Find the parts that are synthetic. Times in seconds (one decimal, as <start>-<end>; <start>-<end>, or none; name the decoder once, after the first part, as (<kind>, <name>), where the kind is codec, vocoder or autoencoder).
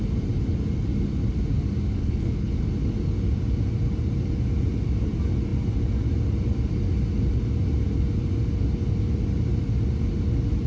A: 2.0-2.5 (codec, HILCodec)